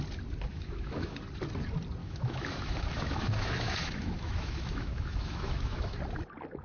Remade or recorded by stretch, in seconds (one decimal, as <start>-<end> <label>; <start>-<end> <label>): 0.0-0.5 recorded; 0.5-1.2 remade; 1.2-2.0 recorded; 2.0-6.0 remade; 6.0-6.6 recorded